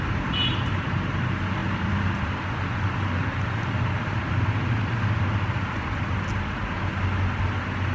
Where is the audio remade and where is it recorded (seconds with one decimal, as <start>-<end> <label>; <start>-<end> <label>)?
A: 0.0-7.9 recorded